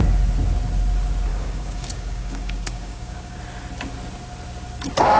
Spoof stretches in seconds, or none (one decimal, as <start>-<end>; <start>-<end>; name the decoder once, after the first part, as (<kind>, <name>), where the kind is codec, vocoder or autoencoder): 1.3-3.4 (codec, DAC)

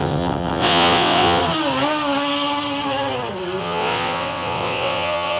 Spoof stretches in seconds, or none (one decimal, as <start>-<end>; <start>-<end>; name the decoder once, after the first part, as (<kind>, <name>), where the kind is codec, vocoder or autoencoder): 0.0-1.4 (vocoder, WaveNeXt); 3.6-5.4

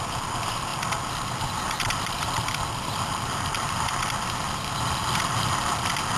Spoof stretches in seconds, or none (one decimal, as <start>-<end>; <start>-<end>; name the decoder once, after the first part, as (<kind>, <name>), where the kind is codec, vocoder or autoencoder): none

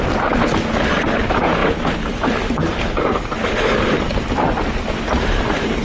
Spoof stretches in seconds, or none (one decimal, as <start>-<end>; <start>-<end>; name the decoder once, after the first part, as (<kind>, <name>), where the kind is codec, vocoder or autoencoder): none